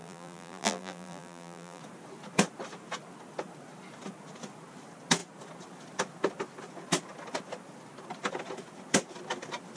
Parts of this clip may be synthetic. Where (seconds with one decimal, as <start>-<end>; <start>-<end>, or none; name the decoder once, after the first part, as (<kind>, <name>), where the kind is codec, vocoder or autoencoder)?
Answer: 0.0-1.8 (vocoder, BigVGAN v2)